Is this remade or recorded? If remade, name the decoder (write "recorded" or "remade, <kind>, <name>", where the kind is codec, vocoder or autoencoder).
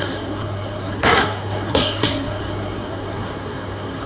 remade, codec, SNAC